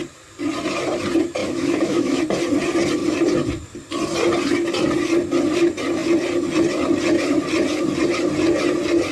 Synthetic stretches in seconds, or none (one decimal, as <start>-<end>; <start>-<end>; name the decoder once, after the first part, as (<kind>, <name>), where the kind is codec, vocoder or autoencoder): 1.4-2.2 (autoencoder, DAC-VAE)